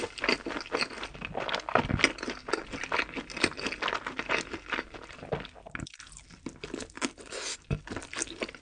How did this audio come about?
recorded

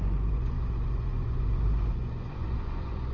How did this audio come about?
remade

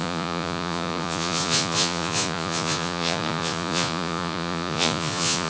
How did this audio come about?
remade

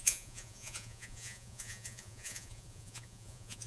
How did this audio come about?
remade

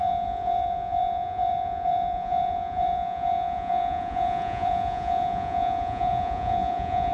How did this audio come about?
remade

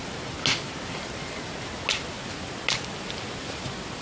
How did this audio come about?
recorded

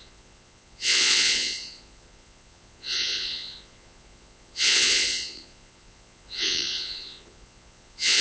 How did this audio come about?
remade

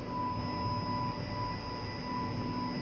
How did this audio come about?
recorded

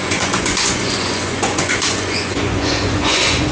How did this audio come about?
remade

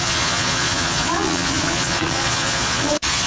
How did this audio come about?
remade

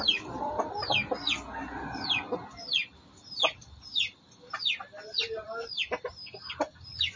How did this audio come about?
recorded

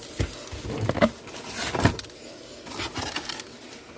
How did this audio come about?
recorded